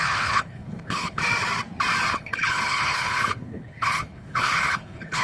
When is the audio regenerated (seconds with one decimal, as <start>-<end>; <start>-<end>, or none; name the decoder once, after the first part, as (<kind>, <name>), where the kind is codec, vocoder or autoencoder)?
0.0-1.2 (codec, HILCodec); 2.1-5.2